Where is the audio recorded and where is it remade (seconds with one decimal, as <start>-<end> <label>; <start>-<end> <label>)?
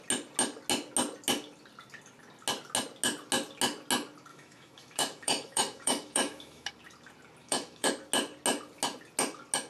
0.0-4.3 recorded; 4.3-6.7 remade; 6.7-7.4 recorded; 7.4-7.9 remade; 7.9-9.7 recorded